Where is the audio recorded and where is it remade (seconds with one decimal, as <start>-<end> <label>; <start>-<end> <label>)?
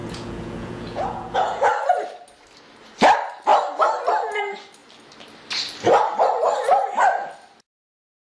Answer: 0.0-1.7 remade; 1.7-8.3 recorded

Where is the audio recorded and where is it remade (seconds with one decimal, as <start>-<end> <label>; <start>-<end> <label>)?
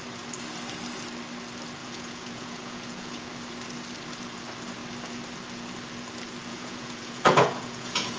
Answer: 0.0-1.8 recorded; 1.8-3.3 remade; 3.3-6.5 recorded; 6.5-8.2 remade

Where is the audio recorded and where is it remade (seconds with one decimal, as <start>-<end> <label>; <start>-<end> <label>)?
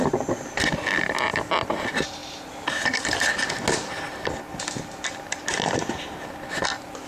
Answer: 0.0-7.1 recorded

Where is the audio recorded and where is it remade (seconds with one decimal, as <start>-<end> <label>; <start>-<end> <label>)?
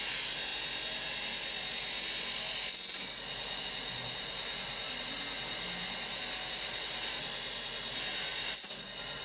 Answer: 0.0-9.2 recorded